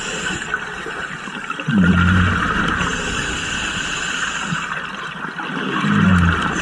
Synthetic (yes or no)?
no